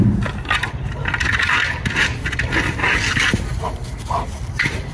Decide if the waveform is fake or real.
real